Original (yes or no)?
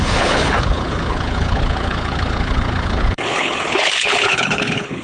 no